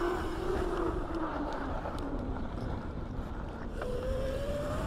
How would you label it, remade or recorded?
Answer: remade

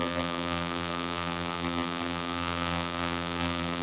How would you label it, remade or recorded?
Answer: remade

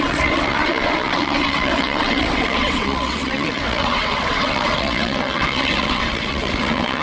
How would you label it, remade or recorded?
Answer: remade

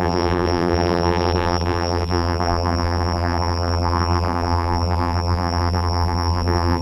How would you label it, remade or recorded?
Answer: remade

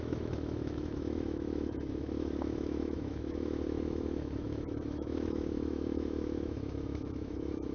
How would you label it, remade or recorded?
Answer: remade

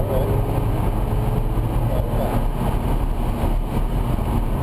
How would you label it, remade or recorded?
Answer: recorded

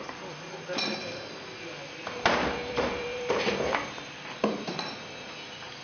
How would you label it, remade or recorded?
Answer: remade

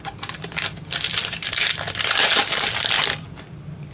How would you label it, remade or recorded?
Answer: recorded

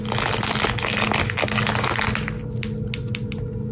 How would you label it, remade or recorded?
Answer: recorded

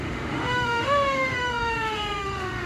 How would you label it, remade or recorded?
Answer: remade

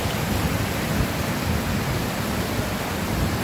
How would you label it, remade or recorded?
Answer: recorded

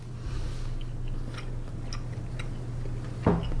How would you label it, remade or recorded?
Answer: recorded